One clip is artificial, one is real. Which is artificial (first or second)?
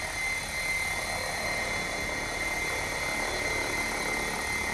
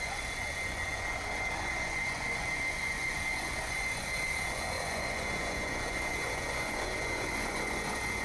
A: second